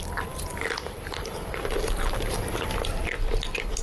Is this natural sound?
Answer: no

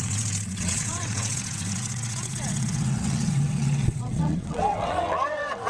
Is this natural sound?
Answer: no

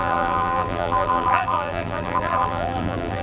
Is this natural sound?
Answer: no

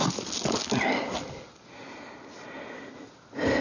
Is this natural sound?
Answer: yes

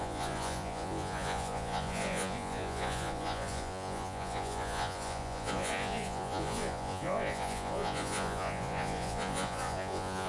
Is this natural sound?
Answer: no